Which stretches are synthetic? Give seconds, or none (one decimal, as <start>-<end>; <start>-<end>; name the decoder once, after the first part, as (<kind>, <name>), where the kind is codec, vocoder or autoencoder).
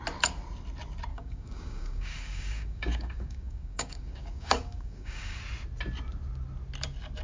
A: 1.1-5.4 (codec, DAC)